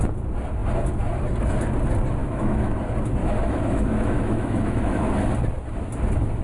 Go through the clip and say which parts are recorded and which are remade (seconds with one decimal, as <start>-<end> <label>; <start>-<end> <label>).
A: 0.0-2.2 recorded; 2.2-2.8 remade; 2.8-3.2 recorded; 3.2-5.0 remade; 5.0-6.4 recorded